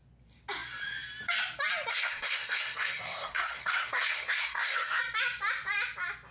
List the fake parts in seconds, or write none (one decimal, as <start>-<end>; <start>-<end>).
1.9-5.0